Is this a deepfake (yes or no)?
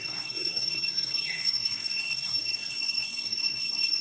yes